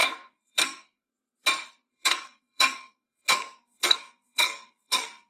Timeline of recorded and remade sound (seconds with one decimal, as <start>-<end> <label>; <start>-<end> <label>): 0.0-1.1 remade; 1.1-1.9 recorded; 1.9-5.3 remade